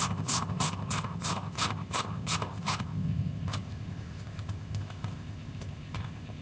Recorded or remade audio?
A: remade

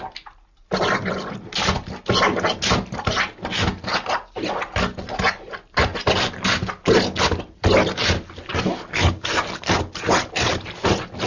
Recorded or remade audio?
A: recorded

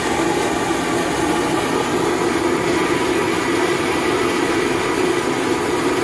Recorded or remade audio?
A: recorded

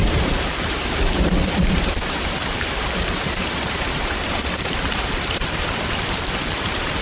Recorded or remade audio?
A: recorded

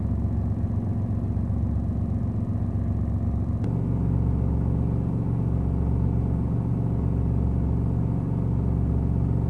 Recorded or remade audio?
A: recorded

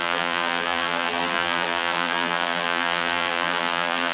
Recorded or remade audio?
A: remade